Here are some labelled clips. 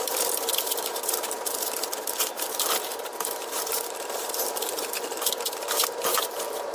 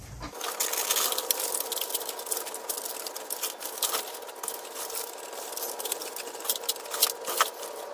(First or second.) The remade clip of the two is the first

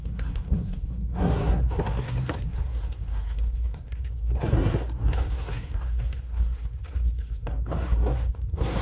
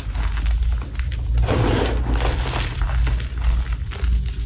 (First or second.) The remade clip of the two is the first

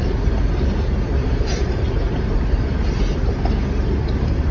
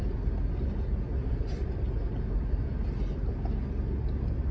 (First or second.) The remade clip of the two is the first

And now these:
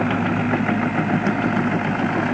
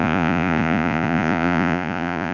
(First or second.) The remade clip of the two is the second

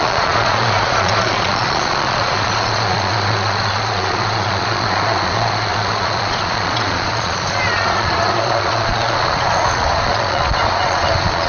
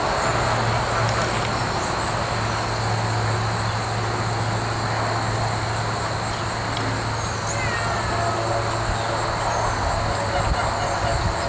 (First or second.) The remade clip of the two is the first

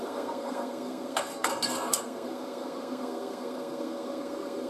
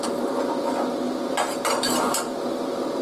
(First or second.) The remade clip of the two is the first